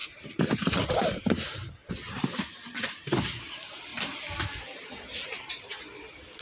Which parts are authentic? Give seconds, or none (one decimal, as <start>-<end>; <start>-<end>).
1.8-2.9; 3.9-4.6